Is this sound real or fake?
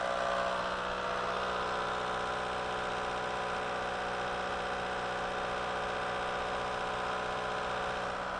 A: real